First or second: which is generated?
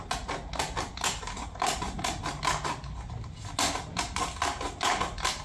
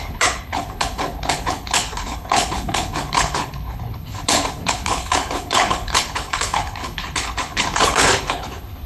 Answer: second